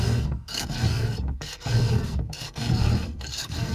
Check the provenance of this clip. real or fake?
fake